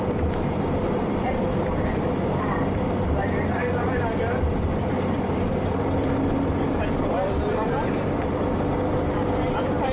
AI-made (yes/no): yes